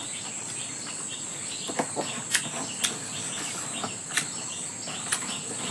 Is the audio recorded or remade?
recorded